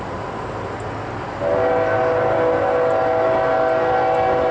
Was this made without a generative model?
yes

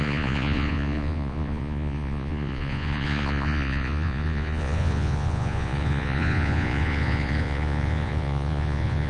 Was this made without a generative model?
no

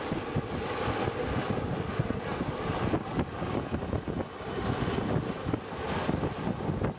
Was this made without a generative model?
yes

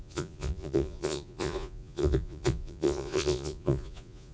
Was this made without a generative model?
no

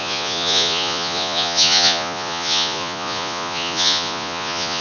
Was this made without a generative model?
no